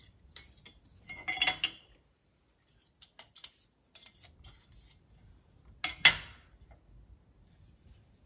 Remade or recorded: recorded